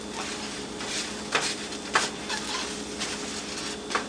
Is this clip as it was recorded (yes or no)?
yes